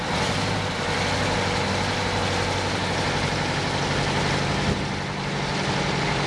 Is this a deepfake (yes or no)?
no